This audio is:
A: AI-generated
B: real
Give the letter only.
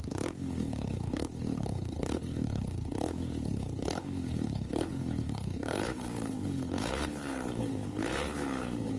A